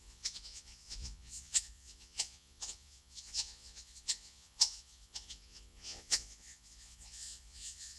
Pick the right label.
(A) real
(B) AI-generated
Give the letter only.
B